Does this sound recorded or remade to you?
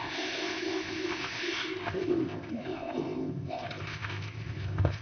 remade